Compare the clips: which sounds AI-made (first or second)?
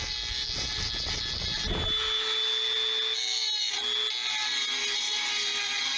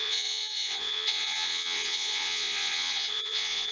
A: second